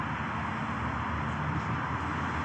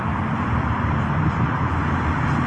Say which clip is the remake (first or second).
second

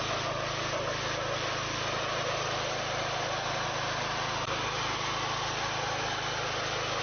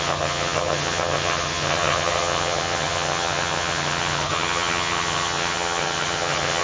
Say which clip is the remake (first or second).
second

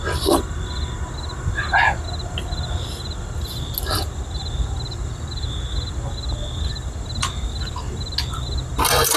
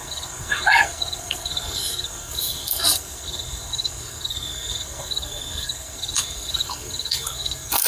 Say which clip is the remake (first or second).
second